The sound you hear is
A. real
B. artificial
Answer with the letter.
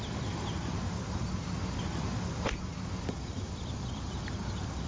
B